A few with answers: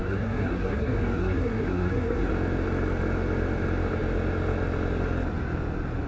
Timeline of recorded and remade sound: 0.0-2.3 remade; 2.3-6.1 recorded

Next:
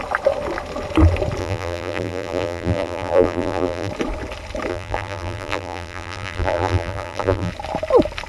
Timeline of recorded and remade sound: 0.0-1.4 recorded; 1.4-3.9 remade; 3.9-4.7 recorded; 4.7-7.5 remade; 7.5-8.3 recorded